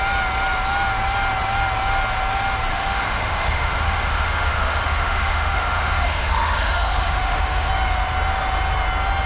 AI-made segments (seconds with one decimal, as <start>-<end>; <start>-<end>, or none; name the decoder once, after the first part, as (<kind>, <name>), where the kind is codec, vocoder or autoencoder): 2.7-7.7 (autoencoder, DAC-VAE)